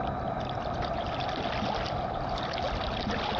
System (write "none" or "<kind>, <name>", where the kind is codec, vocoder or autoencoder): none